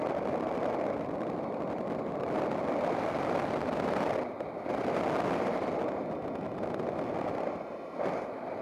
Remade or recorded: remade